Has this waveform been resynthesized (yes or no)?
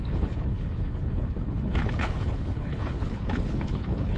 yes